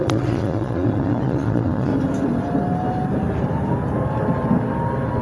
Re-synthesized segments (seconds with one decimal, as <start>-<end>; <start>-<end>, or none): 0.0-1.9